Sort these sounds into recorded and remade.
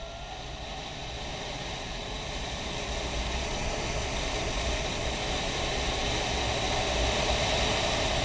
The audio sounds recorded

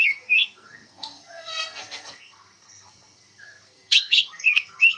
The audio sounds remade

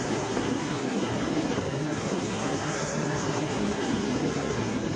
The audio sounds remade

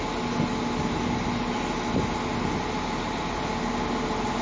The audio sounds recorded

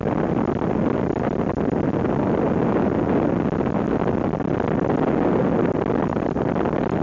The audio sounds recorded